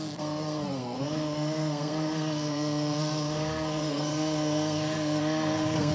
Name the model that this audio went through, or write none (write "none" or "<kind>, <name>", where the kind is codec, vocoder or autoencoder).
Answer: codec, SNAC